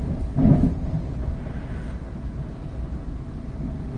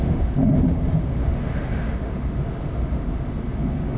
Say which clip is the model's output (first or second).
second